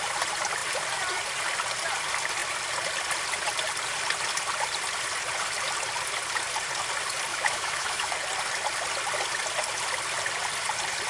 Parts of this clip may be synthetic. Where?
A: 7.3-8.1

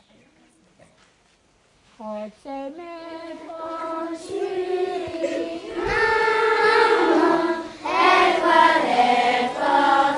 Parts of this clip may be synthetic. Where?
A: 1.7-3.8